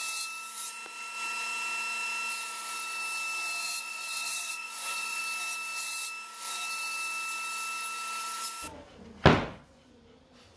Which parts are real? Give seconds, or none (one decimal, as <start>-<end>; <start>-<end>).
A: 0.0-3.6; 5.2-9.5; 10.0-10.6